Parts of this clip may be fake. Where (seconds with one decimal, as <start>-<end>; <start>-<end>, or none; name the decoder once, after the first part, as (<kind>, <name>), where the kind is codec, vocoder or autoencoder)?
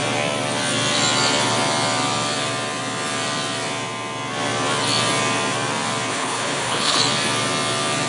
6.1-7.0 (codec, HILCodec)